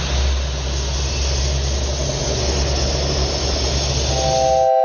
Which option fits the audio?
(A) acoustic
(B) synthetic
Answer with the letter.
A